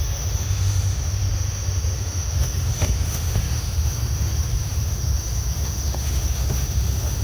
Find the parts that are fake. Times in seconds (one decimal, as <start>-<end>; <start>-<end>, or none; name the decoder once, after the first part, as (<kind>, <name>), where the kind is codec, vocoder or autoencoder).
0.0-7.2 (autoencoder, DAC-VAE)